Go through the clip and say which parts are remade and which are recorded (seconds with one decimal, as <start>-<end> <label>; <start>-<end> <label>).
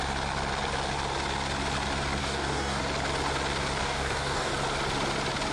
0.0-2.2 recorded; 2.2-2.8 remade; 2.8-3.8 recorded; 3.8-4.5 remade; 4.5-5.5 recorded